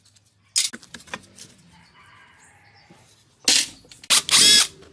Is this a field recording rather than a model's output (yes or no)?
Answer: yes